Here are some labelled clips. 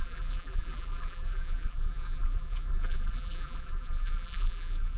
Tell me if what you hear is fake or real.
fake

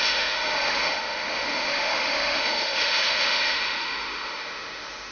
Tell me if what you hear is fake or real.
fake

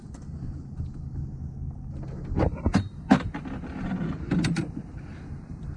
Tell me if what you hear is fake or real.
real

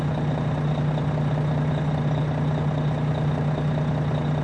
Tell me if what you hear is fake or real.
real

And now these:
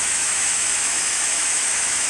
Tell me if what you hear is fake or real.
fake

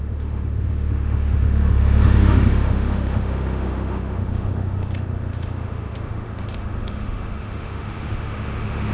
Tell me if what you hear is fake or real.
fake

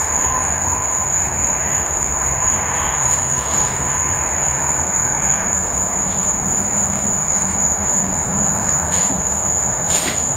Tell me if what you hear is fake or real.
fake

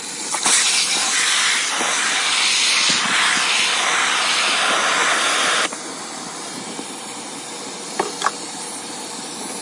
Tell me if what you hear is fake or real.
real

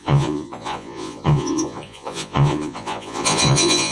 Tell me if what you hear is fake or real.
fake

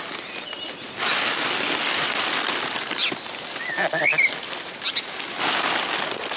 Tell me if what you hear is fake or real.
real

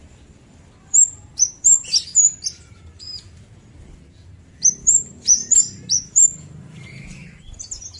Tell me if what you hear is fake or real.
fake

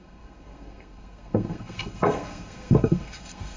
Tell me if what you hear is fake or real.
fake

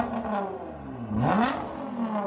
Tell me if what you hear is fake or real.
real